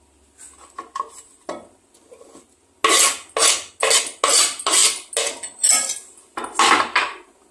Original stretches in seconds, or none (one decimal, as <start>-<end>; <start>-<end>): 0.0-7.5